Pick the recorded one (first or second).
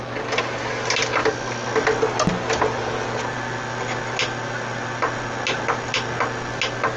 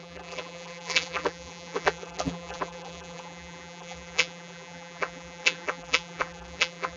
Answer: first